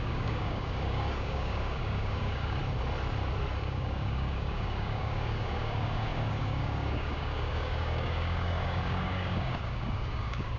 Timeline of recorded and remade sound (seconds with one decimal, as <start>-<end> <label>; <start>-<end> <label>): 0.0-2.6 remade; 2.6-3.6 recorded; 3.6-10.6 remade